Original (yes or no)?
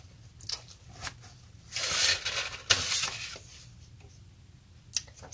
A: yes